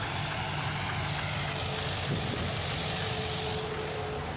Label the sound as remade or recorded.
recorded